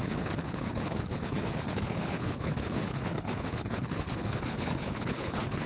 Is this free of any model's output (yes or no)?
no